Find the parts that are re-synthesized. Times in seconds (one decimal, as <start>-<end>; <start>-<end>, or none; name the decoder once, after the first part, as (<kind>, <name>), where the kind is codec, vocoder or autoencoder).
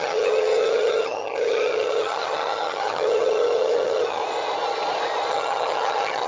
0.0-4.2 (vocoder, HiFi-GAN); 5.3-6.3